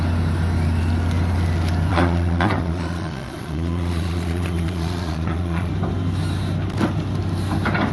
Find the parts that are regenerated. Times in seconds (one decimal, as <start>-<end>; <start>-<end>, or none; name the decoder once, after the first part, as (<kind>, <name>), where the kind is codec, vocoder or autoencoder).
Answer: 1.9-5.7 (vocoder, Vocos)